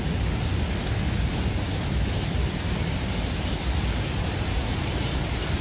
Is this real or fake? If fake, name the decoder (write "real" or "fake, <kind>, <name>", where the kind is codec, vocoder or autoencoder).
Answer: real